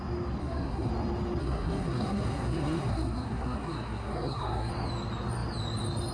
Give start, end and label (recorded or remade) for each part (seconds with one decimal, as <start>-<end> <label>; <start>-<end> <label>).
0.0-0.4 recorded; 0.4-0.9 remade; 0.9-1.4 recorded; 1.4-4.7 remade; 4.7-6.1 recorded